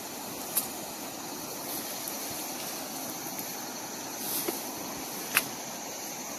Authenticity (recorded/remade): recorded